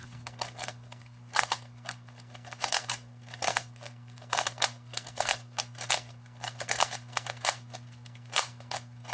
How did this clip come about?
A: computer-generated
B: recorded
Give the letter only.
A